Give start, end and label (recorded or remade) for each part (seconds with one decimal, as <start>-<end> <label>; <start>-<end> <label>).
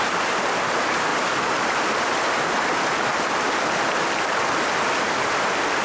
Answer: 0.0-5.8 recorded